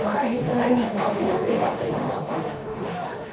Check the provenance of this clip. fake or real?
fake